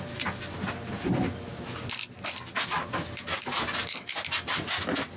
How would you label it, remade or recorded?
recorded